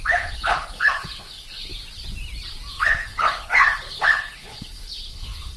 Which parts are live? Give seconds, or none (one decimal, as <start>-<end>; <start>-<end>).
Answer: 1.7-2.7